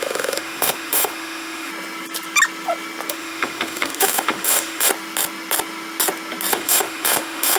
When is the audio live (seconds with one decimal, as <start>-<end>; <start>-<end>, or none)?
1.7-3.1; 4.9-6.5

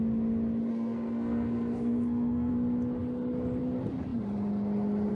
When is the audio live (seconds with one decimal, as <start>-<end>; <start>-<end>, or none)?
0.0-0.7; 2.5-5.1

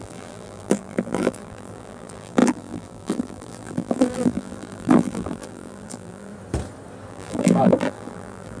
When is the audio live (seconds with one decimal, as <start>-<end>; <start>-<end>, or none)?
6.3-7.1